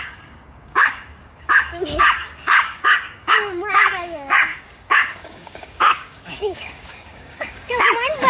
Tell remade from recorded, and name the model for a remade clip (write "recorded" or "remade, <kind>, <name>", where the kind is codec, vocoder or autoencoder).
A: remade, codec, DAC